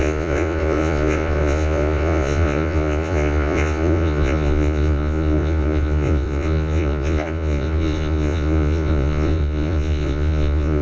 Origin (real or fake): fake